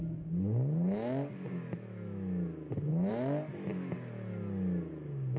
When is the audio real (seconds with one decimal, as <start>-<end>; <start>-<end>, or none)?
0.0-5.4